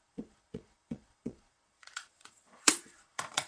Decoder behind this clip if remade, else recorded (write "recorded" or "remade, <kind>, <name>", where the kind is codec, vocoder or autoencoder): remade, vocoder, Vocos